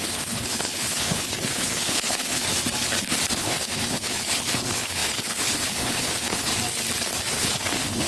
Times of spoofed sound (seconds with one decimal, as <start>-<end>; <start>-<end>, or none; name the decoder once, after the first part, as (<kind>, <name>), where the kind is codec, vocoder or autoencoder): 0.0-2.5 (codec, HILCodec); 3.3-6.5; 7.3-8.1